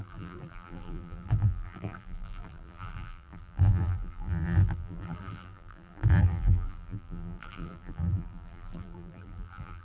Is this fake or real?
fake